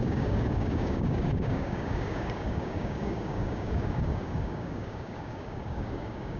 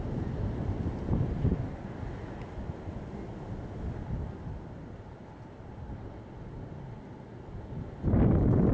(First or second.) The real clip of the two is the second